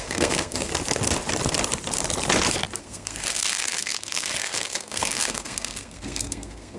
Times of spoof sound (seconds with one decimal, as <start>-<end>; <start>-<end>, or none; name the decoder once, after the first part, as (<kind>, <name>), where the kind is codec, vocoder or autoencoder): 0.0-0.7 (codec, SNAC); 2.8-6.8